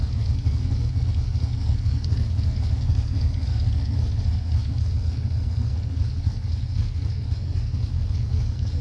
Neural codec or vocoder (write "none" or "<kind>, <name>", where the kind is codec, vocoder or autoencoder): codec, SNAC